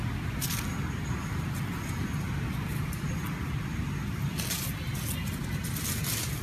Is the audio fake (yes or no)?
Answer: no